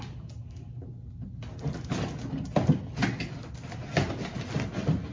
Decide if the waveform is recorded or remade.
recorded